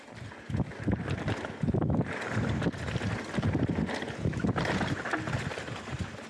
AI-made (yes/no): no